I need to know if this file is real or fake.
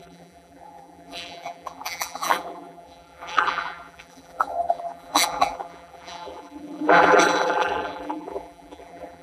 fake